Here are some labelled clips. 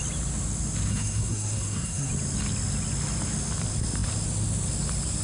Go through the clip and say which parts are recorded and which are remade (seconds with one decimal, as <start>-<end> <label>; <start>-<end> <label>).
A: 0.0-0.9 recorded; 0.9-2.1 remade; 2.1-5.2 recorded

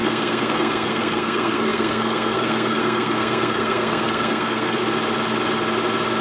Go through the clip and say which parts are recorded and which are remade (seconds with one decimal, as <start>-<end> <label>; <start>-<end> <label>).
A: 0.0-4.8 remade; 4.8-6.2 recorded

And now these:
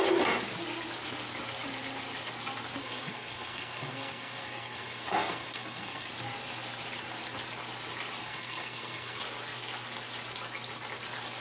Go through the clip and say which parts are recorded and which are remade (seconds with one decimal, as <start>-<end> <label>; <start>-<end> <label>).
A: 0.0-2.8 recorded; 2.8-6.1 remade; 6.1-8.2 recorded; 8.2-9.2 remade; 9.2-11.4 recorded

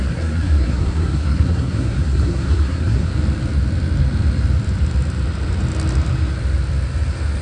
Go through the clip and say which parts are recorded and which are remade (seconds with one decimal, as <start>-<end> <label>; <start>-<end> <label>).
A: 0.0-3.1 remade; 3.1-7.4 recorded